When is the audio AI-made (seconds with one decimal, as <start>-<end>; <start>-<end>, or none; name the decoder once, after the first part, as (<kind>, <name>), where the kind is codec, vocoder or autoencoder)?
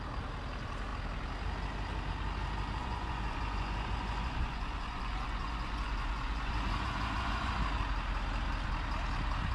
2.8-7.5 (vocoder, Vocos)